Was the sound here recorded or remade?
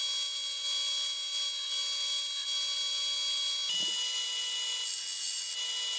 recorded